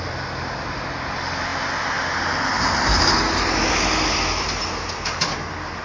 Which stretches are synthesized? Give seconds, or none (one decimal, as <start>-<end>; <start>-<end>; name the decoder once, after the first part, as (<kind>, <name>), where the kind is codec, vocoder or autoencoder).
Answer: 0.0-1.5 (vocoder, BigVGAN v2); 5.0-5.8